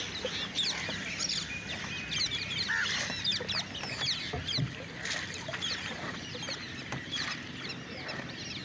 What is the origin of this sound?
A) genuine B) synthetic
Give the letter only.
A